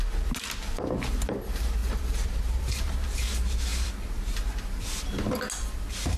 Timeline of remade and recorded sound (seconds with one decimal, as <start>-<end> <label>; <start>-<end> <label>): 0.0-1.8 recorded; 1.8-3.1 remade; 3.1-6.2 recorded